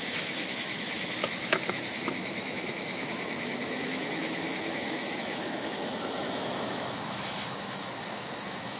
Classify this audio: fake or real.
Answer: fake